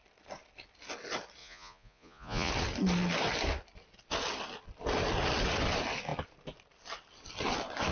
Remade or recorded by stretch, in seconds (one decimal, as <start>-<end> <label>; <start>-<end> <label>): 0.0-1.4 recorded; 1.4-2.5 remade; 2.5-7.9 recorded